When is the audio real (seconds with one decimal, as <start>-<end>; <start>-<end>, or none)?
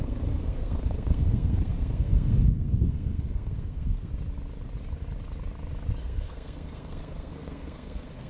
4.1-6.0